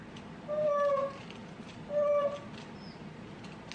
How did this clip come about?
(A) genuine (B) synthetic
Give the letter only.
A